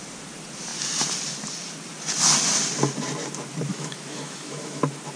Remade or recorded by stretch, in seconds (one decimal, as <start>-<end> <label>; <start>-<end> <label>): 0.0-3.7 recorded; 3.7-4.8 remade; 4.8-5.2 recorded